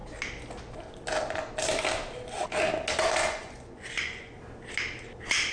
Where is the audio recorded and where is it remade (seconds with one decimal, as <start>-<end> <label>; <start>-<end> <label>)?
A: 0.0-3.2 recorded; 3.2-4.4 remade; 4.4-5.5 recorded